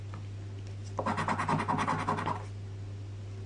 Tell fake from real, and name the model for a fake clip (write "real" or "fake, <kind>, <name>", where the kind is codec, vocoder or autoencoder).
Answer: real